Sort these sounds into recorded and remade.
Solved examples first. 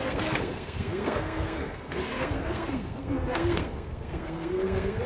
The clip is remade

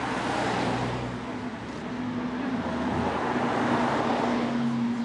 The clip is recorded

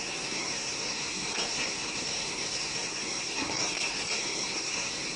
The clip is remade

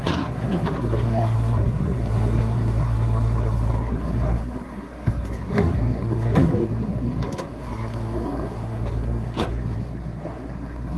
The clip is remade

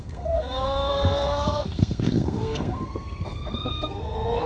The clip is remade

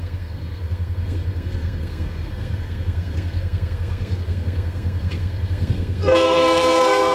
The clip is remade